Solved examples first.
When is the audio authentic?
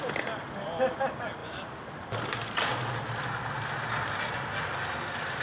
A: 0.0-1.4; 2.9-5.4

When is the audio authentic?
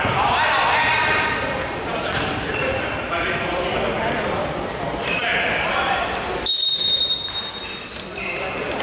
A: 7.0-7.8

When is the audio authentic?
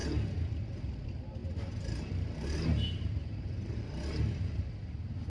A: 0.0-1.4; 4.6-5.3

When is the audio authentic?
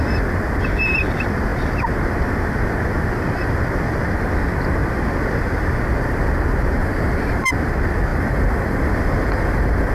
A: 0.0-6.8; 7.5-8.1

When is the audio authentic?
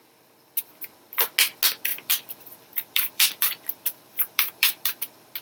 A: 0.0-1.9; 5.0-5.4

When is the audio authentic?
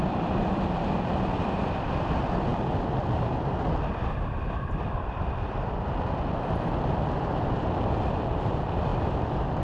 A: none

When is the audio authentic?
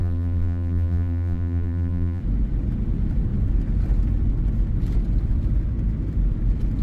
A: 2.2-6.8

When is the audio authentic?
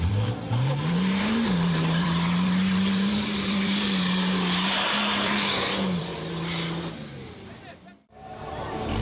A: 6.1-9.0